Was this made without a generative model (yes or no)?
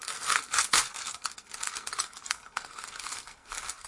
no